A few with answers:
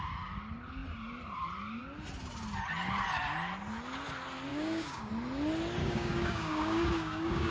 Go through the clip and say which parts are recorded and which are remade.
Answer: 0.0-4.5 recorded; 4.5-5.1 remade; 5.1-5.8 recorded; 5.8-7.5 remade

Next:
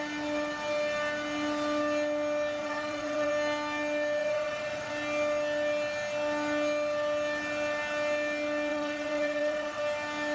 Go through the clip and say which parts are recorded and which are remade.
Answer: 0.0-2.6 recorded; 2.6-3.3 remade; 3.3-4.2 recorded; 4.2-4.9 remade; 4.9-8.7 recorded; 8.7-9.8 remade; 9.8-10.3 recorded